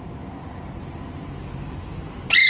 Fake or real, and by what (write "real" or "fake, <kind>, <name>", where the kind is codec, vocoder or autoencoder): real